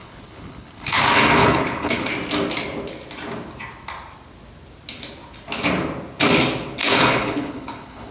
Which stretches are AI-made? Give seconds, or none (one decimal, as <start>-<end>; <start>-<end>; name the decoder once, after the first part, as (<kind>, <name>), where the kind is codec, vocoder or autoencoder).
0.0-1.0 (codec, HILCodec); 1.4-2.1; 6.8-8.1